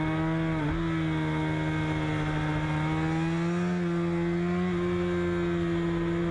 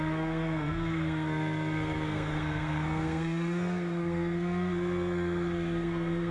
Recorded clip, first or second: first